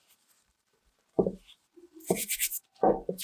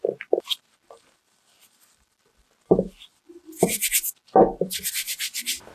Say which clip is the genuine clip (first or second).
second